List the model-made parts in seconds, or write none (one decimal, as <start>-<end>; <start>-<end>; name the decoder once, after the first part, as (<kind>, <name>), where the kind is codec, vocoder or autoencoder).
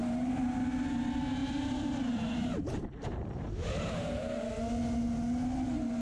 0.0-0.6 (vocoder, BigVGAN v2); 1.4-4.4